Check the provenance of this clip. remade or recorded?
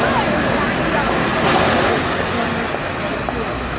recorded